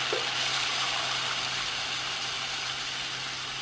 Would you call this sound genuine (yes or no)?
no